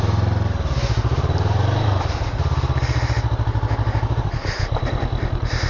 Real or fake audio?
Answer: real